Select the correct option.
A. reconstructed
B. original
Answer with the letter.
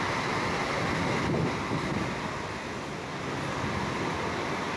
B